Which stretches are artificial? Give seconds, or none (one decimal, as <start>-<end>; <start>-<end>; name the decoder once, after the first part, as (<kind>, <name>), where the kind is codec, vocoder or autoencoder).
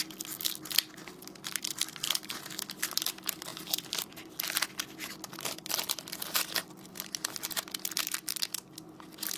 none